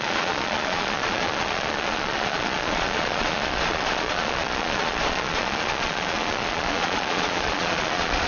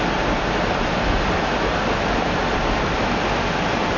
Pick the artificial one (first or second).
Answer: first